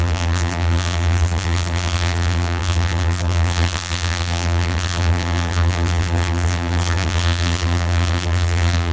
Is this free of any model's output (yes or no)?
no